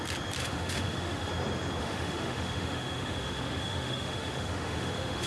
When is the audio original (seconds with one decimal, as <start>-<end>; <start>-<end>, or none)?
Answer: 0.0-0.4; 1.3-1.8